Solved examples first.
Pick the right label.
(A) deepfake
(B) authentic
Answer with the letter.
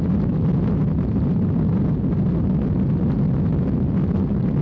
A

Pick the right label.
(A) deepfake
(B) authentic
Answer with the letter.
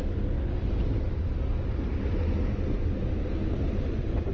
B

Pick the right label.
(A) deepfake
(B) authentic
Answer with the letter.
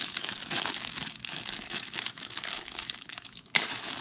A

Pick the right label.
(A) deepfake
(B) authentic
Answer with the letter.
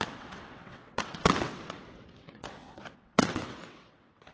A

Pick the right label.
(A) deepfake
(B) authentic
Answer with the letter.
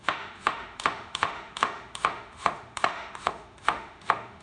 A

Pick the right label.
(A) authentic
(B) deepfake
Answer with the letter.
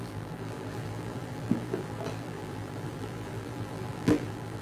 B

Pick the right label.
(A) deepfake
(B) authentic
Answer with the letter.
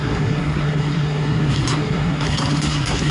A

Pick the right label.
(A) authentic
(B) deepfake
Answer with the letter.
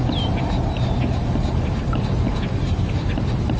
A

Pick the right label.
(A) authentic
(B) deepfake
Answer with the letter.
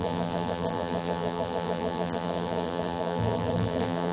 B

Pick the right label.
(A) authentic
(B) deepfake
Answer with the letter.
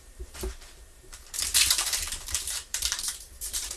B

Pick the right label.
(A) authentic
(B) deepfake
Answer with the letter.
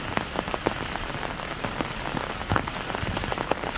A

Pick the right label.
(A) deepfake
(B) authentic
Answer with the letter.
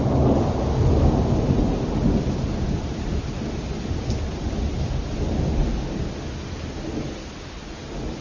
B